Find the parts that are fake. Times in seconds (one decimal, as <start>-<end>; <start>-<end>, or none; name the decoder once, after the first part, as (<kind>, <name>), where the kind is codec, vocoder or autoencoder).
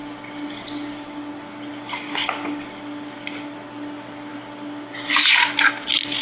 none